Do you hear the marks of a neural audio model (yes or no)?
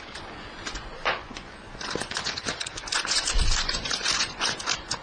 yes